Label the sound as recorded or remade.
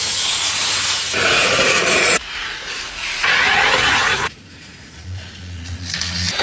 remade